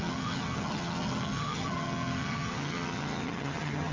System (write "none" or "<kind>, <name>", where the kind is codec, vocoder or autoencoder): vocoder, HiFi-GAN